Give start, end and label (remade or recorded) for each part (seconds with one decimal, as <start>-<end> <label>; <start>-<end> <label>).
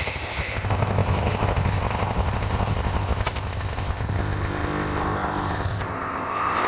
0.0-6.7 remade